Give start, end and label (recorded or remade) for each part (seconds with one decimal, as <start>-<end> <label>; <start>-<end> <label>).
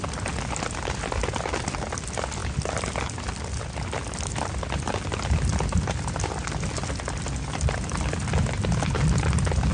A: 0.0-5.5 recorded; 5.5-8.2 remade; 8.2-9.7 recorded